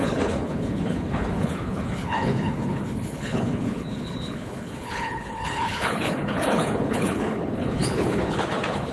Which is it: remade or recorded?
remade